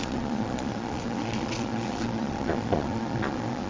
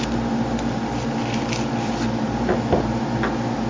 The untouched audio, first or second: second